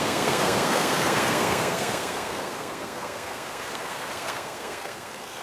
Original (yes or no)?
no